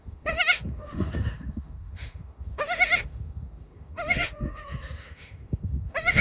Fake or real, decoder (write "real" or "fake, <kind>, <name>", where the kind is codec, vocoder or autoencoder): fake, autoencoder, DAC-VAE